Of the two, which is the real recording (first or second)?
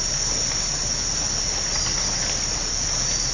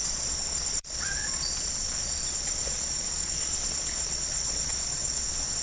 first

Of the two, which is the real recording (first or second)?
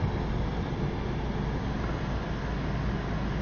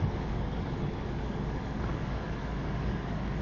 first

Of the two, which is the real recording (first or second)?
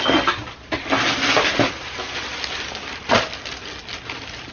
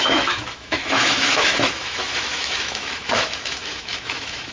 first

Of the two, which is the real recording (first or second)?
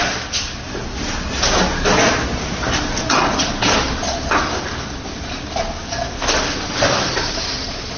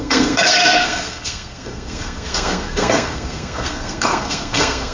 first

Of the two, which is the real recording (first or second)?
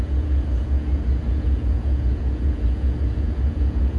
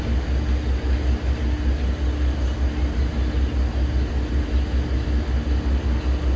second